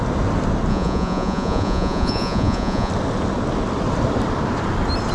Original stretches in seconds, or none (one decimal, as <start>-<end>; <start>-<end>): 0.0-0.7; 2.9-5.1